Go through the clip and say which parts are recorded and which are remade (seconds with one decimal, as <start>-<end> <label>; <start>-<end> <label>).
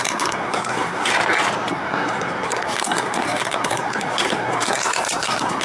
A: 0.0-1.1 remade; 1.1-1.7 recorded; 1.7-5.6 remade